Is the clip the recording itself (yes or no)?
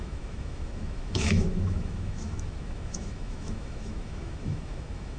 no